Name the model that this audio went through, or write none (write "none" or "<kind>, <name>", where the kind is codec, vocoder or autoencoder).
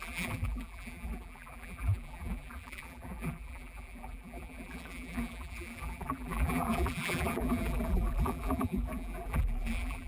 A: vocoder, BigVGAN v2